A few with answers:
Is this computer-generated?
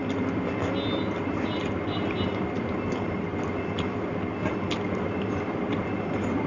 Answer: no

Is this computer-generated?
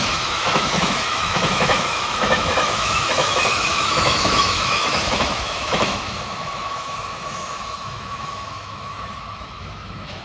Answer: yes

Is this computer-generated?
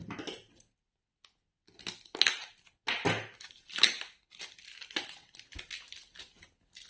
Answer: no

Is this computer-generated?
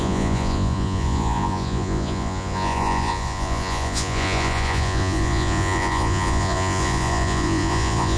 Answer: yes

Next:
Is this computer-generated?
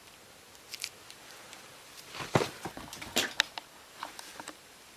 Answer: no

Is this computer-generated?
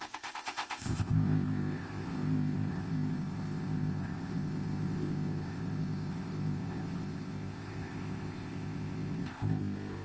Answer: yes